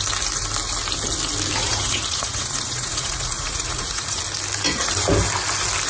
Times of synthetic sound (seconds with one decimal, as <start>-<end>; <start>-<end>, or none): 1.6-4.2